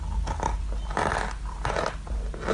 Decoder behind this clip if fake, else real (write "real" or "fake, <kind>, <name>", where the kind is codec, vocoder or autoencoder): real